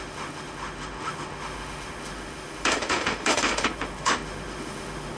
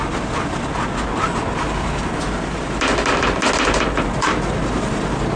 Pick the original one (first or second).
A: second